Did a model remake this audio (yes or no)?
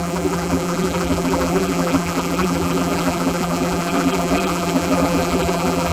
yes